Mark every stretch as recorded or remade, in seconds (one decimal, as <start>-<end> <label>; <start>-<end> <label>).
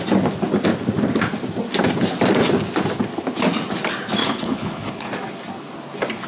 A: 0.0-4.2 recorded; 4.2-5.1 remade; 5.1-6.3 recorded